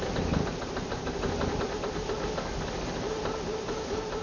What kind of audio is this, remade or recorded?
recorded